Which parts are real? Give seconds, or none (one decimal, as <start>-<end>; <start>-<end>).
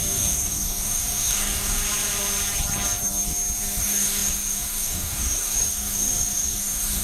1.8-3.8